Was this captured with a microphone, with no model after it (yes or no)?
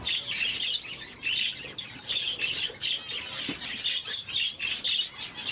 yes